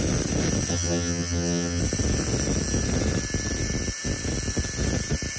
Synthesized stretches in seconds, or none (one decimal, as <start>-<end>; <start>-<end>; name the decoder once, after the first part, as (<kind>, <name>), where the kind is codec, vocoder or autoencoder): 0.7-1.8 (vocoder, HiFi-GAN)